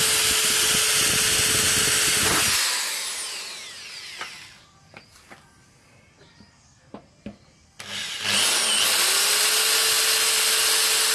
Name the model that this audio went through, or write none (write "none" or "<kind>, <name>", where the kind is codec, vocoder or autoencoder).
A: none